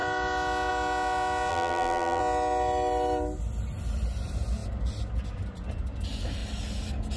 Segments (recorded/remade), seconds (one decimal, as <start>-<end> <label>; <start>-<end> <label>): 0.0-1.5 recorded; 1.5-2.2 remade; 2.2-7.2 recorded

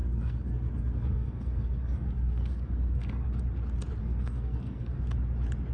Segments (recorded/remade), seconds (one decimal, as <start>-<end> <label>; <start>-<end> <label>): 0.0-3.4 remade; 3.4-4.0 recorded; 4.0-5.0 remade; 5.0-5.7 recorded

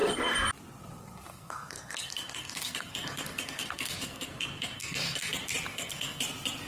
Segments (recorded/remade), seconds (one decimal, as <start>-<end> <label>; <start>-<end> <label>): 0.0-1.3 recorded; 1.3-5.3 remade; 5.3-5.7 recorded; 5.7-6.2 remade; 6.2-6.7 recorded